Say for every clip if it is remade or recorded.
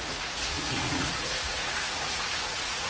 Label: remade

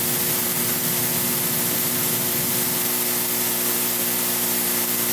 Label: recorded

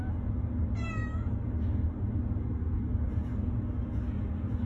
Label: recorded